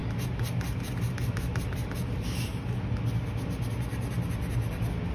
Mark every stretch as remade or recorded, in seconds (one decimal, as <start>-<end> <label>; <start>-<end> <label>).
0.0-5.1 recorded

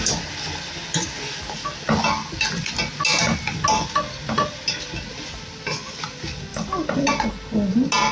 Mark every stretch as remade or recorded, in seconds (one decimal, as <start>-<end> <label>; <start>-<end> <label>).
0.0-3.1 recorded; 3.1-3.6 remade; 3.6-6.5 recorded; 6.5-7.3 remade; 7.3-8.1 recorded

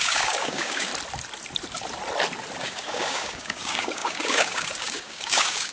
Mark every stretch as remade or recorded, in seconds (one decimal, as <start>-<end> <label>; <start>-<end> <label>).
0.0-0.9 remade; 0.9-2.6 recorded; 2.6-5.7 remade

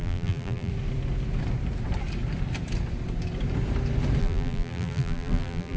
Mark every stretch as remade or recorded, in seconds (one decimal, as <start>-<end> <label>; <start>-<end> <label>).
0.0-0.7 remade; 0.7-4.2 recorded; 4.2-5.8 remade

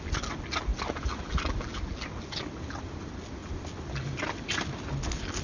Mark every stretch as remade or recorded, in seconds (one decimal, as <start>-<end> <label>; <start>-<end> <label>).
0.0-5.4 recorded

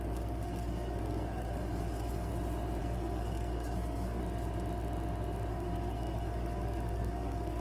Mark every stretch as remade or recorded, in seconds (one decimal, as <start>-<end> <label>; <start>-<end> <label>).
0.0-2.3 remade; 2.3-2.8 recorded; 2.8-4.2 remade; 4.2-5.5 recorded; 5.5-7.6 remade

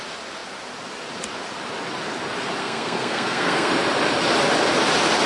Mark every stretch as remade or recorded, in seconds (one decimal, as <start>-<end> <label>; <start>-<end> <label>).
0.0-2.6 recorded; 2.6-3.7 remade; 3.7-5.3 recorded